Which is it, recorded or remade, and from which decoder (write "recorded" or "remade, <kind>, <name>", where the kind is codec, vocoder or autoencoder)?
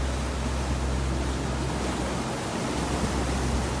recorded